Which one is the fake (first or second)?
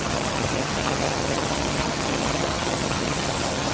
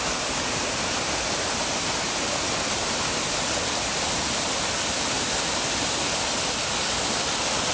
first